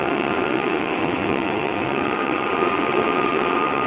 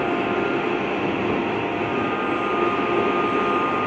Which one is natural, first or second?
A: second